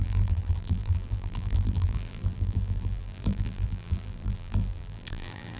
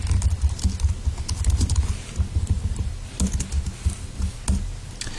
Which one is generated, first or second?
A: first